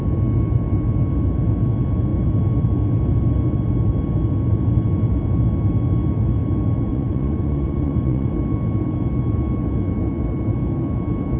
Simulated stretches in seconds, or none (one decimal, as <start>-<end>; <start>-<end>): 6.9-8.3